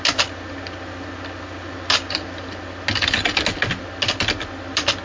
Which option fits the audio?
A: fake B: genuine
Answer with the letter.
B